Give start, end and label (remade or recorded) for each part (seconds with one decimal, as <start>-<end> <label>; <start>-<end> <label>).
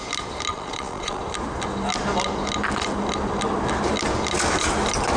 0.0-0.5 recorded; 0.5-1.2 remade; 1.2-5.2 recorded